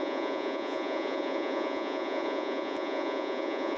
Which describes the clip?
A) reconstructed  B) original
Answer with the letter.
A